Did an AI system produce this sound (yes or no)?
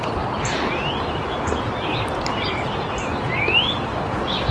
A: no